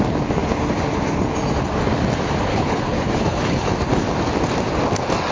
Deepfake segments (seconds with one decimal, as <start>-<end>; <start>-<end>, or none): 2.5-3.7